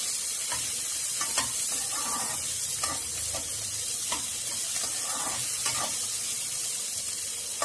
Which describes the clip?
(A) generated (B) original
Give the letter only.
B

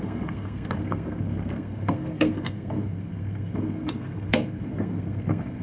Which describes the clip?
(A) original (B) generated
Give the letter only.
B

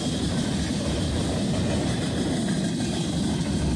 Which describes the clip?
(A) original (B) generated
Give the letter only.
A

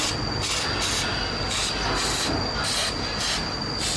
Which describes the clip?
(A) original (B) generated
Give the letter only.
A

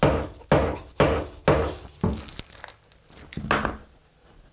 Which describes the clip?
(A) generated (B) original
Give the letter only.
B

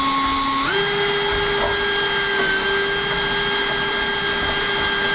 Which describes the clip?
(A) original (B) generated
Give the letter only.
A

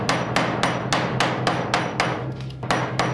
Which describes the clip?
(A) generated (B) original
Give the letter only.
B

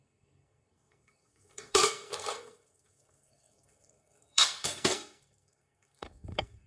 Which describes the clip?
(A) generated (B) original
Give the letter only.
A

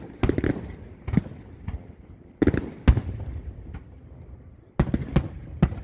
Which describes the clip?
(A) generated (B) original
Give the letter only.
B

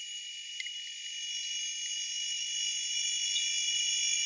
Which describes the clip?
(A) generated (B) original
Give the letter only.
B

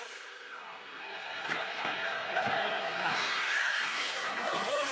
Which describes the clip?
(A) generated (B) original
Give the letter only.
A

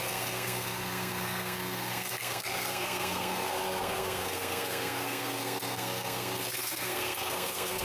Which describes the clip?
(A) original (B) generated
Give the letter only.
B